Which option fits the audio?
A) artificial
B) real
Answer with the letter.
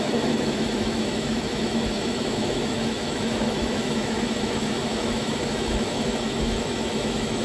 A